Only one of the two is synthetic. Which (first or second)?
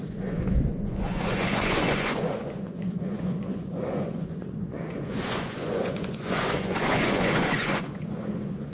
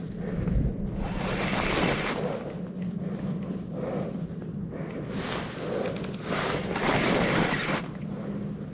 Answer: first